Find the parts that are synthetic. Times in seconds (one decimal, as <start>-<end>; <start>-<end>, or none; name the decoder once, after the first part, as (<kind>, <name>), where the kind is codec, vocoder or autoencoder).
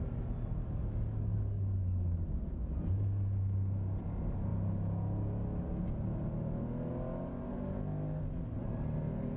0.6-2.4 (codec, DAC)